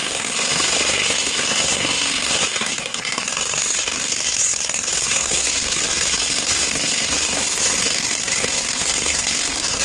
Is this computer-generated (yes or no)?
yes